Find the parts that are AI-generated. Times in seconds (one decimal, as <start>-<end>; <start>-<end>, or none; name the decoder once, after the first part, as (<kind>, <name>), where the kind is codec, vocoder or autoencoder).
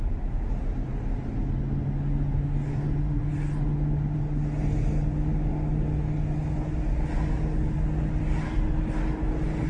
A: none